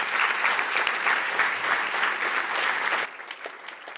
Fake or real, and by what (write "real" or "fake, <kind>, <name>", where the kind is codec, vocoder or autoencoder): real